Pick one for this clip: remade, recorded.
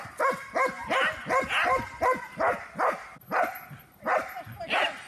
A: recorded